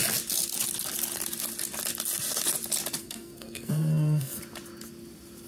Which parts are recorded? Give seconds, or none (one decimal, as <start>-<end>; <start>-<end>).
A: 0.0-3.0; 4.4-5.5